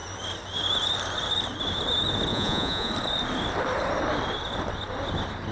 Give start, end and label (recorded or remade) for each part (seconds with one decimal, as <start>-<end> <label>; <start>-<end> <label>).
0.0-2.3 recorded; 2.3-2.9 remade; 2.9-5.5 recorded